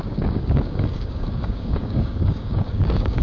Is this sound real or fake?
fake